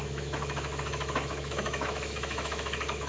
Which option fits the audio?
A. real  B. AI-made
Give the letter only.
B